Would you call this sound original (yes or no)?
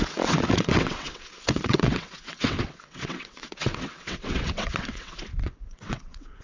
no